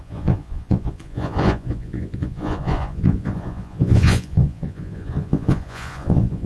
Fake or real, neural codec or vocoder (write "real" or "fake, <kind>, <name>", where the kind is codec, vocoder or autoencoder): fake, vocoder, Vocos